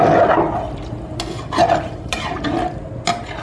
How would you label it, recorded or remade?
recorded